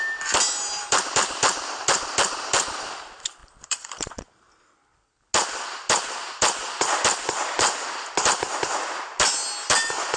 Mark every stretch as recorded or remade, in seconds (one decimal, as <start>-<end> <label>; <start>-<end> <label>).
0.0-3.4 recorded; 3.4-4.1 remade; 4.1-10.2 recorded